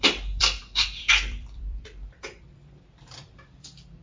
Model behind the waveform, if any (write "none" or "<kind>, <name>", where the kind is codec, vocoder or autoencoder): vocoder, BigVGAN v2